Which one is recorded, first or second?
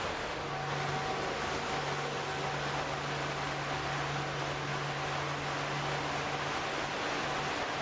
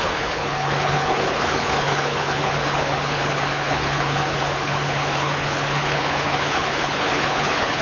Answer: first